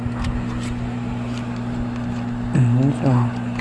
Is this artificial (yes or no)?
no